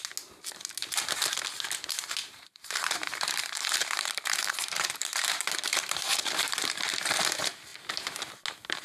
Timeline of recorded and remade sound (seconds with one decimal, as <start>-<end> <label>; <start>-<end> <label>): 0.0-2.2 recorded; 2.2-7.0 remade; 7.0-8.8 recorded